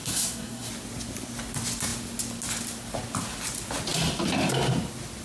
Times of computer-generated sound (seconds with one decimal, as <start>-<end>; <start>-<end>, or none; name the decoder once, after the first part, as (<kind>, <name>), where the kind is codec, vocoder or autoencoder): 0.0-0.7 (codec, SNAC)

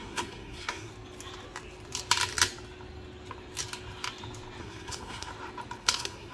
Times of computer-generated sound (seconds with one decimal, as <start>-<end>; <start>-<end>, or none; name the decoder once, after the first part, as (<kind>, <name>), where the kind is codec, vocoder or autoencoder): 0.0-0.9 (codec, SNAC); 4.6-5.3; 5.8-6.3

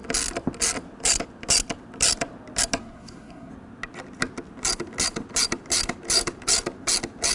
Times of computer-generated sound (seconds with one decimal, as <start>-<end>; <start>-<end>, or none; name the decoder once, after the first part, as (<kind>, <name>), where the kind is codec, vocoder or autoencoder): 2.8-3.5 (codec, SNAC)

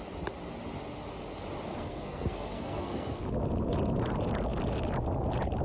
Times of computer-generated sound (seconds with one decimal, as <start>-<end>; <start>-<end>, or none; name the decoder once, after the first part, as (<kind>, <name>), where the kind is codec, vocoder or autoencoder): 1.7-3.2 (codec, SNAC)

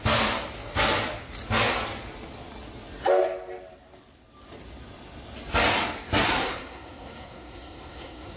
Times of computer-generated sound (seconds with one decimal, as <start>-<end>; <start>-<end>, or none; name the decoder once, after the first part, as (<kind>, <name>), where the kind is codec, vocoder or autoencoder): 6.3-8.4 (codec, SNAC)

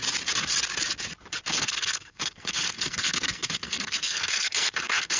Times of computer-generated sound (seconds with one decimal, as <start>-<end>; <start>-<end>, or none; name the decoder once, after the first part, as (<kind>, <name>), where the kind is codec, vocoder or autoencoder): 1.5-5.2 (codec, SNAC)

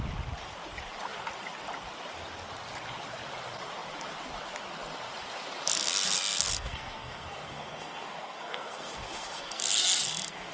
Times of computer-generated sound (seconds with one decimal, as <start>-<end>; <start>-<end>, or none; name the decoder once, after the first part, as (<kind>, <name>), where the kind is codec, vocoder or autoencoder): 5.8-10.5 (codec, SNAC)

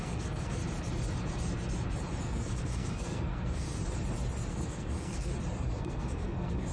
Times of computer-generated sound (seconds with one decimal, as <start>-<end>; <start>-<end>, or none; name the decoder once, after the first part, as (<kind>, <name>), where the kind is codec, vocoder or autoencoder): 0.0-0.6 (codec, SNAC); 2.2-3.8; 4.5-5.3; 5.8-6.7